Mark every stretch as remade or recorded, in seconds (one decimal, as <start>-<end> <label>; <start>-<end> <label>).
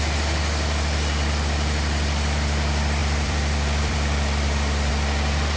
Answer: 0.0-3.0 recorded; 3.0-4.9 remade; 4.9-5.6 recorded